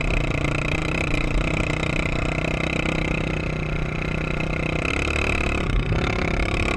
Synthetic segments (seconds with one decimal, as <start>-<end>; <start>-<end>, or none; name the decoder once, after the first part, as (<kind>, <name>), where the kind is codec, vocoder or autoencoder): none